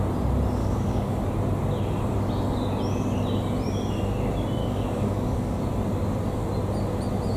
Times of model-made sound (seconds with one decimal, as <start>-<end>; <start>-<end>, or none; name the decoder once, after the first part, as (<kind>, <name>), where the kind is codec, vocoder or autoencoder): 0.6-1.2 (codec, DAC); 4.6-5.6

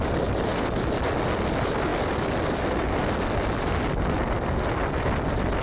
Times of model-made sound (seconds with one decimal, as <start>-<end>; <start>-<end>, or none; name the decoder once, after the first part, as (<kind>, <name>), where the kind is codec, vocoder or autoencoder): none

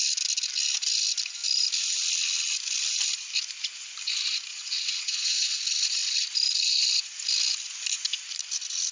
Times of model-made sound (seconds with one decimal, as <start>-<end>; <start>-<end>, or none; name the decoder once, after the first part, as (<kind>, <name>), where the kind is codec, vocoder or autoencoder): 4.5-5.6 (vocoder, WaveNeXt)

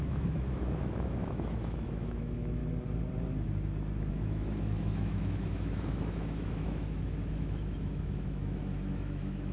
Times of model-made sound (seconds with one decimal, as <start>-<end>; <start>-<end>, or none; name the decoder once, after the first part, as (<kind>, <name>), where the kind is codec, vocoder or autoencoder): 0.0-2.6 (autoencoder, DAC-VAE); 4.1-9.5

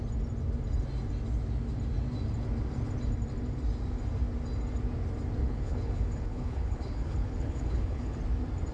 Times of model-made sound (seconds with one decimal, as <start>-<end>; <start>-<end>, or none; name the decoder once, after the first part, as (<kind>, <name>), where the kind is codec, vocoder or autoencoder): 5.4-8.2 (codec, HILCodec)

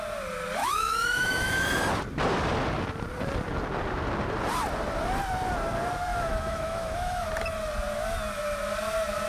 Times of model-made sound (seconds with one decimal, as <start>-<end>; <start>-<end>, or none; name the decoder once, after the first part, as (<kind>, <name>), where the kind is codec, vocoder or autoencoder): 0.6-1.8 (autoencoder, DAC-VAE); 6.1-7.3

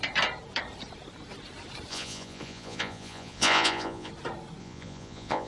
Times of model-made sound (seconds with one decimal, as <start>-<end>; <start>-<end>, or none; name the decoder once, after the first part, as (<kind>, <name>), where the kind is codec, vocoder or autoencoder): 1.9-4.1 (vocoder, Vocos); 4.6-5.5

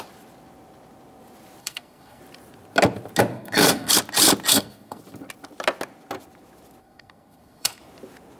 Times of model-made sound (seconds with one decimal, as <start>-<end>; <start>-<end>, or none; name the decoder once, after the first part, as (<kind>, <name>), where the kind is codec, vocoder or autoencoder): 1.6-2.2 (codec, SNAC); 3.3-3.9; 4.5-5.0; 6.8-7.8